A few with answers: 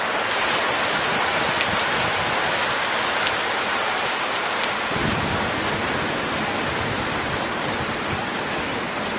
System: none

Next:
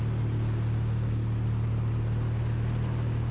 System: none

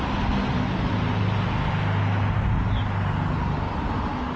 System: none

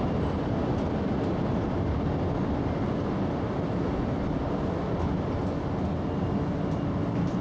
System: none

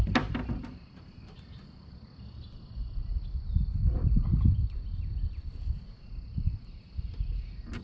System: none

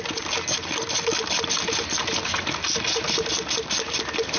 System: none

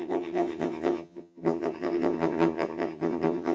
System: vocoder, HiFi-GAN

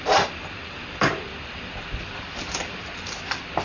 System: none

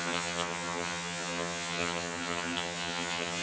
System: vocoder, HiFi-GAN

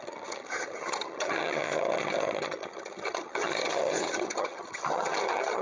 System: vocoder, HiFi-GAN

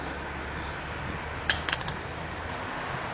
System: none